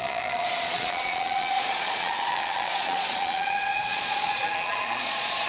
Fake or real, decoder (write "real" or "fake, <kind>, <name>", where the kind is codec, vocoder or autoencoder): fake, vocoder, Vocos